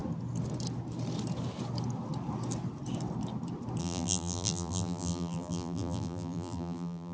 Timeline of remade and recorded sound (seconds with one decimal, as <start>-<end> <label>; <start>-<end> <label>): 0.0-3.8 recorded; 3.8-7.1 remade